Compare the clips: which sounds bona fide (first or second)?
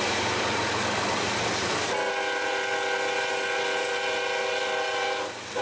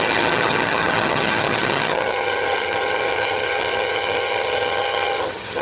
first